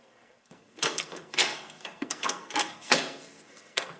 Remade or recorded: remade